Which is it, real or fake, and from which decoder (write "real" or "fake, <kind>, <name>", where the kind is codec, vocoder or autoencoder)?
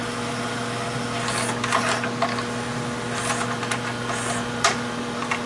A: real